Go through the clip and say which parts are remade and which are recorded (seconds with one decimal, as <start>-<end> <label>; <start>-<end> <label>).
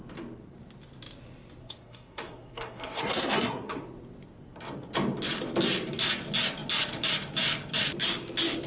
0.0-1.6 recorded; 1.6-3.8 remade; 3.8-8.7 recorded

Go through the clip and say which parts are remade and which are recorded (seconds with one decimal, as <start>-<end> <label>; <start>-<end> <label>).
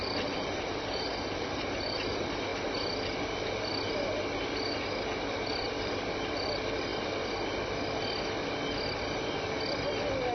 0.0-2.0 remade; 2.0-10.3 recorded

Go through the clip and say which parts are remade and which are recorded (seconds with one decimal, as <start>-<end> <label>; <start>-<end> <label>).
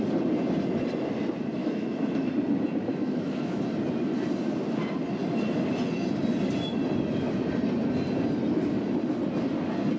0.0-1.6 recorded; 1.6-2.3 remade; 2.3-2.9 recorded; 2.9-3.6 remade; 3.6-10.0 recorded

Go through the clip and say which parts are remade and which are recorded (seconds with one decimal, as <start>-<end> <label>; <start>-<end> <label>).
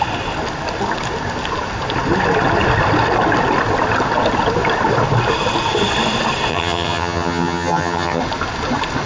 0.0-6.5 recorded; 6.5-8.2 remade; 8.2-9.1 recorded